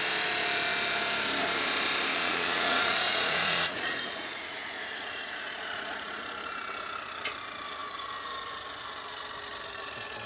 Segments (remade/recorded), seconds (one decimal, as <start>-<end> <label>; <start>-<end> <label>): 0.0-2.1 recorded; 2.1-6.2 remade; 6.2-10.3 recorded